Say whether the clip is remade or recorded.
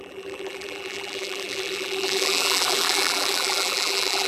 remade